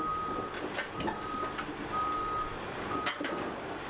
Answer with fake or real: real